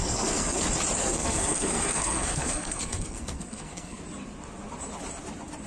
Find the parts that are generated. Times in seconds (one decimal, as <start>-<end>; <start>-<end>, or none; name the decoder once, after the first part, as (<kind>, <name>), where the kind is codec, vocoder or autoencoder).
0.0-0.6 (codec, SNAC); 1.0-4.0